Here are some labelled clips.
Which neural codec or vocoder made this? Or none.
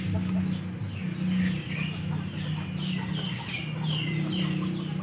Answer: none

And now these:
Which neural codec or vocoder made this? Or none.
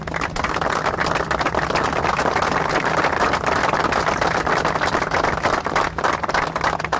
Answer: none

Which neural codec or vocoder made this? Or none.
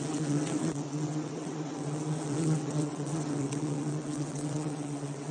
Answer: vocoder, WaveNeXt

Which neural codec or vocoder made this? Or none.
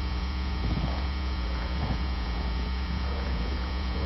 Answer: vocoder, Vocos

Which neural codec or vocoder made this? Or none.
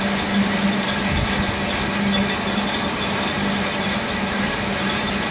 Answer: none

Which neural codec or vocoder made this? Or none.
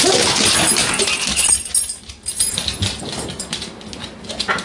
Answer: none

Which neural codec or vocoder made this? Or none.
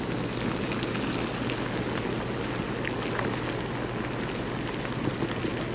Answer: none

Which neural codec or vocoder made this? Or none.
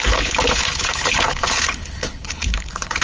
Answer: codec, HILCodec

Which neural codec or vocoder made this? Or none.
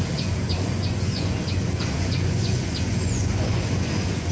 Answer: vocoder, Vocos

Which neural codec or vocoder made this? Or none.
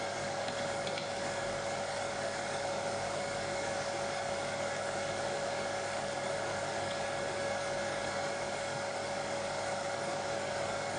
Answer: codec, DAC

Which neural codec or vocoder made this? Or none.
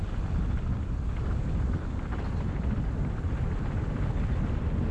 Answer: none